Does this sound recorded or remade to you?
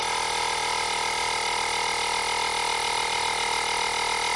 recorded